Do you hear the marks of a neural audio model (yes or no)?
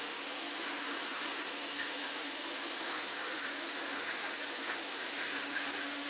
yes